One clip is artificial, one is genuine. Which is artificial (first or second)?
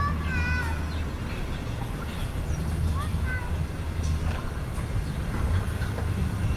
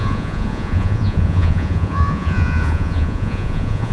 second